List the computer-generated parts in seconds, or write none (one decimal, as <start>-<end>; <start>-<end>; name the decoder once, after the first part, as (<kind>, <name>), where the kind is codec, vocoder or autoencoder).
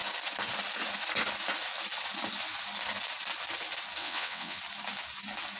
4.0-4.6 (vocoder, WaveNeXt)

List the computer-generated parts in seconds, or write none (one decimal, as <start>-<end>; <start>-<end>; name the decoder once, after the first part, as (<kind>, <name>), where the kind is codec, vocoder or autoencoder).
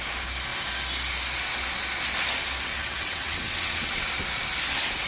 2.7-4.1 (vocoder, WaveNeXt)